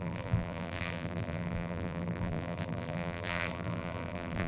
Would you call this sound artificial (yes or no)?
yes